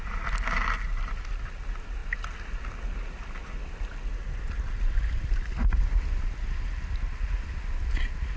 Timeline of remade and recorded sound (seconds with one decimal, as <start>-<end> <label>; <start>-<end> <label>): 0.0-8.4 recorded